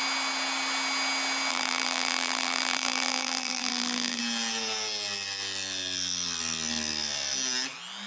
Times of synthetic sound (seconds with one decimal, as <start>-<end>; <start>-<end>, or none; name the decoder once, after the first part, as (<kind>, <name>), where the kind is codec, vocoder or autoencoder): 1.5-4.2 (vocoder, BigVGAN v2)